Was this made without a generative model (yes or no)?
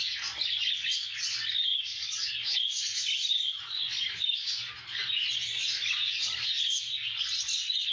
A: yes